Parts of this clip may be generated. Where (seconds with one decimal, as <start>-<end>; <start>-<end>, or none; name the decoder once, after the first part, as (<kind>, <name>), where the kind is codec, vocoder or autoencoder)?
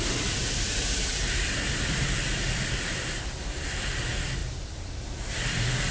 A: 0.4-3.9 (vocoder, BigVGAN v2); 4.4-5.1